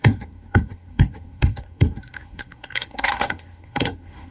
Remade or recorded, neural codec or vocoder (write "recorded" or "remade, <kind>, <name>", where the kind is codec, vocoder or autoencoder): remade, codec, SNAC